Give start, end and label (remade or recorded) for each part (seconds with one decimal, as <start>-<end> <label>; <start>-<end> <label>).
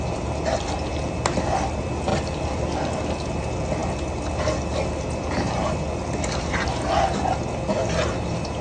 0.0-8.6 recorded